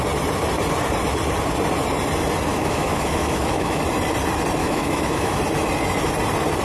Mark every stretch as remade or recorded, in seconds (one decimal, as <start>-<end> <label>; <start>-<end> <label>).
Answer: 0.0-2.5 recorded; 2.5-3.8 remade; 3.8-4.6 recorded; 4.6-5.4 remade; 5.4-6.6 recorded